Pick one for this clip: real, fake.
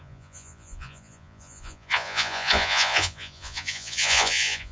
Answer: fake